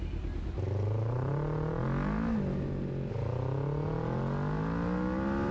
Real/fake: real